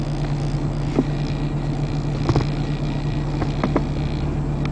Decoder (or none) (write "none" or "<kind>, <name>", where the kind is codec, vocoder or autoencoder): none